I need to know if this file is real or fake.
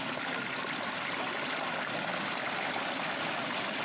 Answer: real